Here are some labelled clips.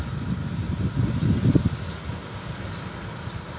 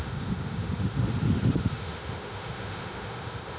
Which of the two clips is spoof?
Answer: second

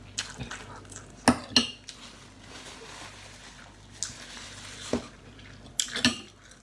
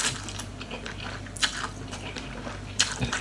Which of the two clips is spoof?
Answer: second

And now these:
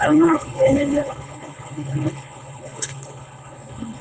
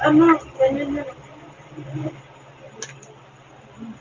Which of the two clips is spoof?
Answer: first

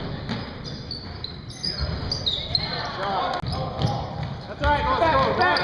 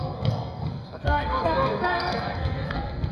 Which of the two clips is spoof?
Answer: second